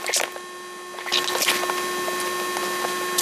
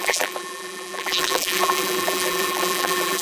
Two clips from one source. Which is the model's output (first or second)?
second